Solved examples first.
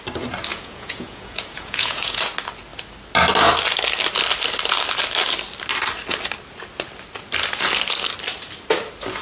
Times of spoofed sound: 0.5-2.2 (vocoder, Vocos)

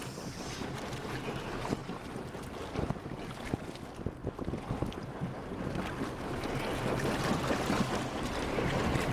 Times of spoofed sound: 1.8-2.3 (vocoder, BigVGAN v2)

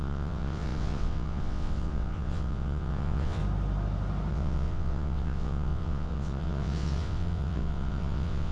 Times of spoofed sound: 0.0-3.4 (vocoder, WaveNeXt); 4.3-8.5